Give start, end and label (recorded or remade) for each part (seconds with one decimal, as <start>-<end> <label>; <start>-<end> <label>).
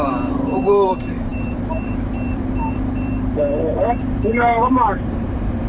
0.0-5.7 remade